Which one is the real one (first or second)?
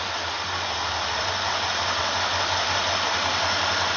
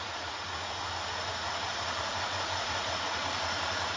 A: first